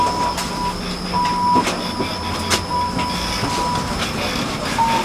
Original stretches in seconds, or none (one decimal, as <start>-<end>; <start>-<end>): 0.0-5.0